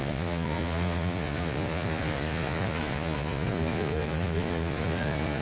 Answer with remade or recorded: remade